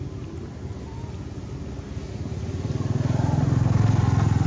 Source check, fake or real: real